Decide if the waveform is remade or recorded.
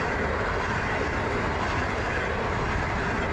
recorded